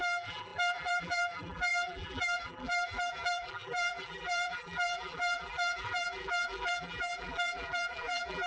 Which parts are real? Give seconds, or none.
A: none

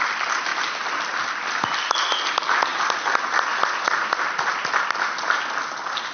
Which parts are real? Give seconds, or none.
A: 0.0-0.5; 2.0-2.7; 3.2-6.1

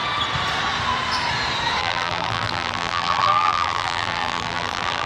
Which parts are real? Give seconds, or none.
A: 0.0-1.8

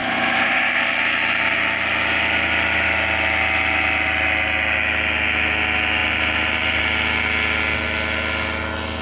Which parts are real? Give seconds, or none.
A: 0.7-6.0; 6.8-9.0

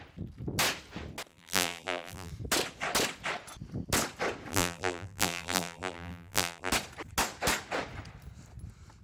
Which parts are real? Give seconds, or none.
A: 0.0-1.3; 2.3-4.5; 6.7-9.0

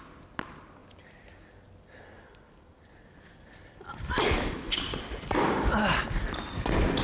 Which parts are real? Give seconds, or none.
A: 0.0-0.8; 5.0-6.0; 6.5-7.0

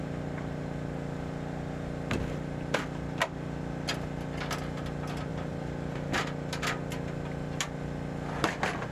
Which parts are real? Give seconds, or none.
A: 0.0-5.3; 6.1-8.9

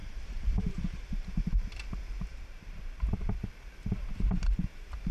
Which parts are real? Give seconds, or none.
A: 1.7-2.3; 3.4-5.1